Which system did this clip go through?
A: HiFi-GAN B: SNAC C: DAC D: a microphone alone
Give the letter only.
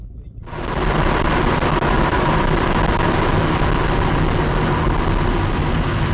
D